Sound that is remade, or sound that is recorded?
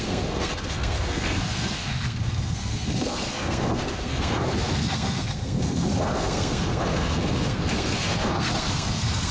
remade